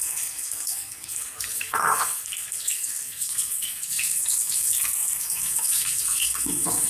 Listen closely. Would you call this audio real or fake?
fake